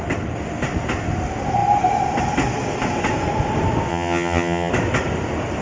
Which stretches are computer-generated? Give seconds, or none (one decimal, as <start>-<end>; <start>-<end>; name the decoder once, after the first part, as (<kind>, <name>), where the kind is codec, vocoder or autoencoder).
3.9-4.7 (vocoder, HiFi-GAN)